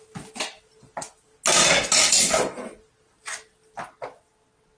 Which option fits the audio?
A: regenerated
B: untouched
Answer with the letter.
B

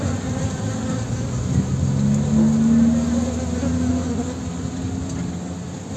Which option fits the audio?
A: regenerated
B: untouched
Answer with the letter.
B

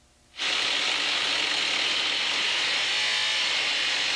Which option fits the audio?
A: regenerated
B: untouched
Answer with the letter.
B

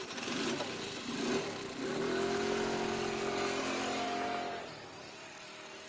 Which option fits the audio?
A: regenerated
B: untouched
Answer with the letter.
B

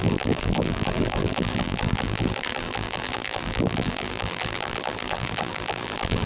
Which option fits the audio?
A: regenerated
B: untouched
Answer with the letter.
A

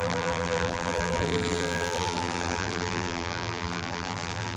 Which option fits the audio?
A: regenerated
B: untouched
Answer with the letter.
A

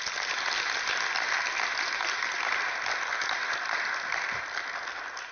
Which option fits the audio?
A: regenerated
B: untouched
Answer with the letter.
B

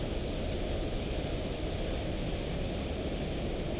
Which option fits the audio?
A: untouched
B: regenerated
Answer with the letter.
A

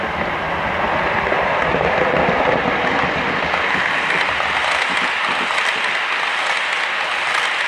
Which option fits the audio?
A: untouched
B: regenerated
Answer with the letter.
A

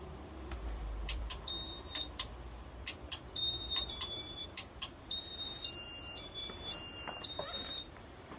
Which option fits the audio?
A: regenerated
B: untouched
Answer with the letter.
A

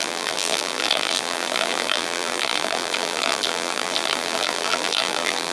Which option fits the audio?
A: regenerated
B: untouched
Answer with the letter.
A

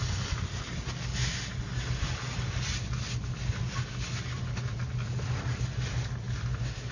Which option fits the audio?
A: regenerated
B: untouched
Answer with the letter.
B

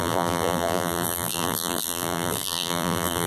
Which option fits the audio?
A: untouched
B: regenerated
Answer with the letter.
B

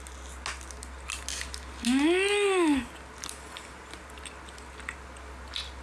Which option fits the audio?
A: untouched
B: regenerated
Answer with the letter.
A